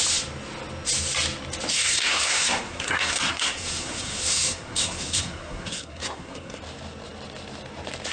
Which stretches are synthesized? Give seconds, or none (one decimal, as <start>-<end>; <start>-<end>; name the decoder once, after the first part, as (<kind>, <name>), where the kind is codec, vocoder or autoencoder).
1.7-6.6 (codec, SNAC)